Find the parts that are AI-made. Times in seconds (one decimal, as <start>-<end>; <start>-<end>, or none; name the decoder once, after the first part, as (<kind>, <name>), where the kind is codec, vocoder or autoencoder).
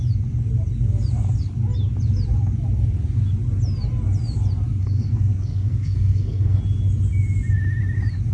4.8-6.6 (codec, SNAC)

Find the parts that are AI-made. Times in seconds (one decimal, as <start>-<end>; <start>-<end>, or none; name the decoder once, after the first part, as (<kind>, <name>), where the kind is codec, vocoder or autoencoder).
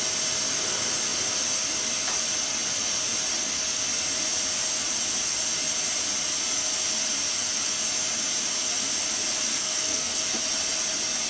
9.5-10.2 (codec, SNAC)